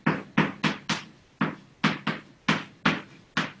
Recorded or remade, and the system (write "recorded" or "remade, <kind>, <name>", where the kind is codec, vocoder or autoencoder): recorded